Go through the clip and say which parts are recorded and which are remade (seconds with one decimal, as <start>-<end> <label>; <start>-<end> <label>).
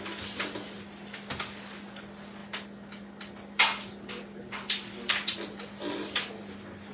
0.0-6.9 recorded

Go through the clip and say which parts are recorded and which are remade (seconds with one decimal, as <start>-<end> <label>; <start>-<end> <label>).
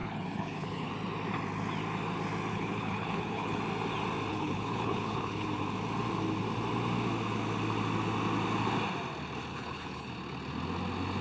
0.0-0.9 remade; 0.9-2.5 recorded; 2.5-3.6 remade; 3.6-4.3 recorded; 4.3-5.5 remade; 5.5-9.5 recorded; 9.5-10.1 remade; 10.1-11.2 recorded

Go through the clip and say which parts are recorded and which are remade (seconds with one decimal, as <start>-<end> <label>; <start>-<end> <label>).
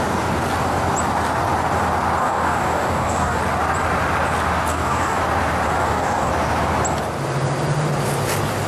0.0-2.2 recorded; 2.2-3.4 remade; 3.4-4.7 recorded; 4.7-5.2 remade; 5.2-5.8 recorded; 5.8-6.3 remade; 6.3-8.7 recorded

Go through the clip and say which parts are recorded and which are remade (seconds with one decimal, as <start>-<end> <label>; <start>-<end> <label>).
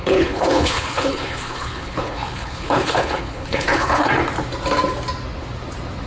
0.0-4.1 remade; 4.1-6.1 recorded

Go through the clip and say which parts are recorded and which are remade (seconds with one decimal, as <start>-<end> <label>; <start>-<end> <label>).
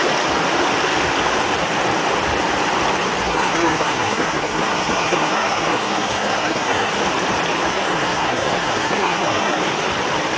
0.0-3.2 recorded; 3.2-6.9 remade; 6.9-7.7 recorded; 7.7-9.6 remade; 9.6-10.4 recorded